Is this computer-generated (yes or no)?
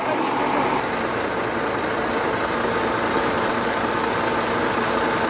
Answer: no